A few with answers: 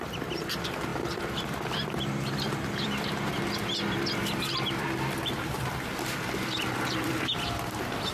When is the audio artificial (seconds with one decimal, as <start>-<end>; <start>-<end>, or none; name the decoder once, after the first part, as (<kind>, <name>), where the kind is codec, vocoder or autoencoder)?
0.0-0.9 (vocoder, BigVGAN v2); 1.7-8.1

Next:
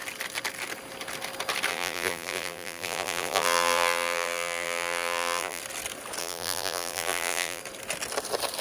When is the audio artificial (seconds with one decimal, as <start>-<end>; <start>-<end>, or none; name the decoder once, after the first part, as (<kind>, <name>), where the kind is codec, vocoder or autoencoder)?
1.7-5.6 (vocoder, BigVGAN v2); 6.2-7.6

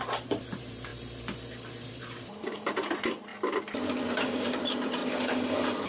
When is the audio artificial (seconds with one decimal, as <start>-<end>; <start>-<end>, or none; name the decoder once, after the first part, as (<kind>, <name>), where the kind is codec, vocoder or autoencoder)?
0.0-0.9 (vocoder, BigVGAN v2); 1.9-3.3; 4.0-5.0

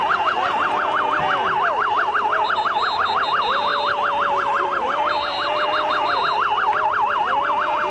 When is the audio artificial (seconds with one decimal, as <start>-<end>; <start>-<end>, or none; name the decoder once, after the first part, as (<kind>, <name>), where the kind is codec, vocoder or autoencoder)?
3.7-6.2 (vocoder, BigVGAN v2)

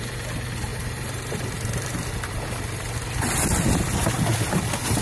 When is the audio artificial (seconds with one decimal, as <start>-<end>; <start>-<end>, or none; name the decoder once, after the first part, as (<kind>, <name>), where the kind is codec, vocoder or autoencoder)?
0.7-2.1 (vocoder, BigVGAN v2)

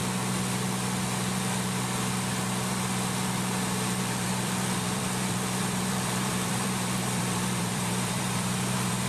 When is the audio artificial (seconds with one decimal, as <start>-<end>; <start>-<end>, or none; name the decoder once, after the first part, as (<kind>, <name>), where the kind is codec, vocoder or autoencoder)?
4.0-9.1 (vocoder, BigVGAN v2)

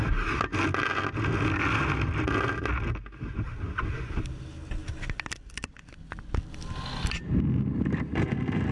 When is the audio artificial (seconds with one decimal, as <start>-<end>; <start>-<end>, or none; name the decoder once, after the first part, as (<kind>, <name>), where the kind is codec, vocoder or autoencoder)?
none

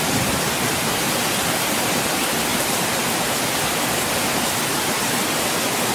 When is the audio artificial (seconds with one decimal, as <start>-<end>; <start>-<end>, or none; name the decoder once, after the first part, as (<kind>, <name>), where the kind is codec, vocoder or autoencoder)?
2.5-3.3 (vocoder, BigVGAN v2)